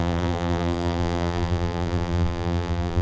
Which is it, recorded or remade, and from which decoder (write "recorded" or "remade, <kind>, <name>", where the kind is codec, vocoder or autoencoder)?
remade, vocoder, BigVGAN v2